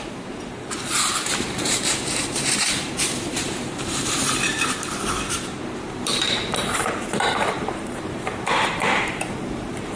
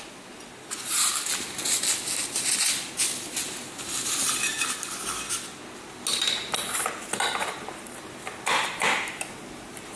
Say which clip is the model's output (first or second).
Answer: first